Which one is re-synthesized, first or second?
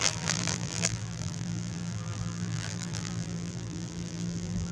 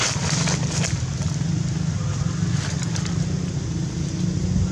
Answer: first